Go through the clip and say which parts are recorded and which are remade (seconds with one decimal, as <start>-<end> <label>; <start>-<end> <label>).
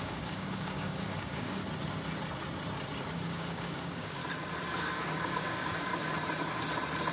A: 0.0-1.6 remade; 1.6-3.1 recorded; 3.1-4.2 remade; 4.2-4.8 recorded; 4.8-5.9 remade; 5.9-7.1 recorded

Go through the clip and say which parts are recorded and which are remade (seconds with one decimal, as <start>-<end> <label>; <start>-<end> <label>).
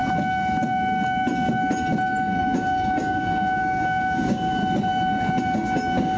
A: 0.0-2.4 recorded; 2.4-4.6 remade; 4.6-5.4 recorded; 5.4-6.2 remade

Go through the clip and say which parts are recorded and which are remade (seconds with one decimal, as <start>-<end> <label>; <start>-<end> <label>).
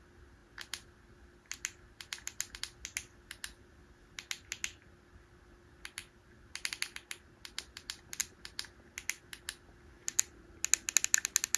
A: 0.0-11.6 recorded